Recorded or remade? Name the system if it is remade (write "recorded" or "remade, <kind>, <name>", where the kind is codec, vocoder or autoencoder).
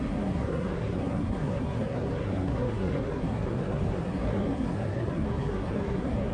remade, codec, SNAC